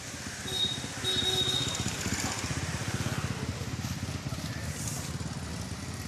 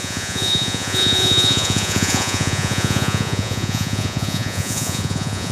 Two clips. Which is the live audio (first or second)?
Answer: first